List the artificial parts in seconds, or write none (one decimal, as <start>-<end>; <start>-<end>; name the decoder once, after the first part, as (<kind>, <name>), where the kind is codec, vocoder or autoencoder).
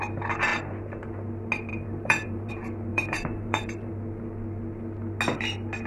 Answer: 1.7-2.5 (vocoder, BigVGAN v2); 2.9-3.9